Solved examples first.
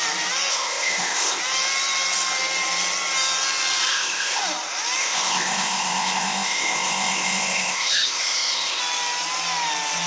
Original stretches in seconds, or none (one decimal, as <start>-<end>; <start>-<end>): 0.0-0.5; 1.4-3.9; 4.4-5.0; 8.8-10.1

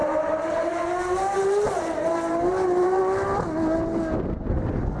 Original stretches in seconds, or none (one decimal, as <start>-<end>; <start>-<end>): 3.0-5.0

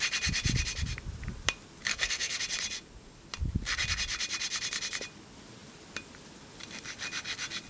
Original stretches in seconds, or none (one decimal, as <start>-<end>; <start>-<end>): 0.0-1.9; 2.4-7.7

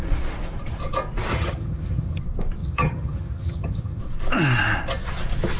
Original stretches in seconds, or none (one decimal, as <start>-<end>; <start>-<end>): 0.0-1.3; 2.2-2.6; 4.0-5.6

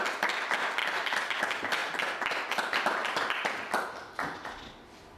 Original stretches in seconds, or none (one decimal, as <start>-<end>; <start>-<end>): 0.0-0.8; 1.4-1.8; 2.4-3.0; 4.1-5.2

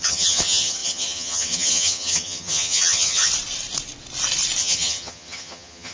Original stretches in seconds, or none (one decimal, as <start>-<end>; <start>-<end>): 3.3-4.6

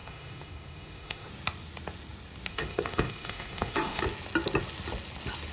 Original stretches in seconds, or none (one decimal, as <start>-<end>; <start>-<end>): 1.3-2.5; 4.0-5.5